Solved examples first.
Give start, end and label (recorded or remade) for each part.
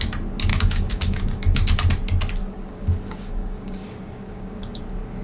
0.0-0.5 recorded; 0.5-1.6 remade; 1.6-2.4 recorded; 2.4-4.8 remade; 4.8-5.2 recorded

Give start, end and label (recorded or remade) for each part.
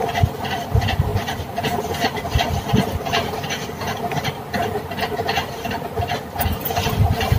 0.0-7.4 recorded